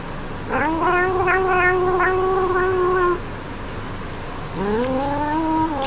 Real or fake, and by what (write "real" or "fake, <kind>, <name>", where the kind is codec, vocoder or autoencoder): real